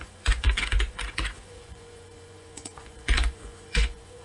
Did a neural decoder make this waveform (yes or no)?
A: yes